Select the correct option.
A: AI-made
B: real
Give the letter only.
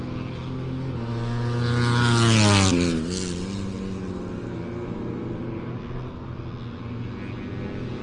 B